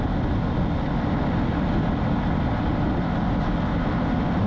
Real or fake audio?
real